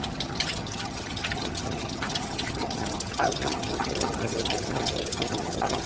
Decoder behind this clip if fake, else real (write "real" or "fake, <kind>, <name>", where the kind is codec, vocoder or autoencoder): fake, vocoder, HiFi-GAN